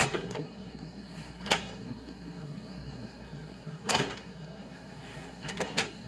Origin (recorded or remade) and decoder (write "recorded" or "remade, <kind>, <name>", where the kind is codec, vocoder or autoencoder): remade, codec, SNAC